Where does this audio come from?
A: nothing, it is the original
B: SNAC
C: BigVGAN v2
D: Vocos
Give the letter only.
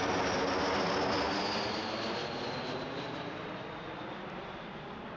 A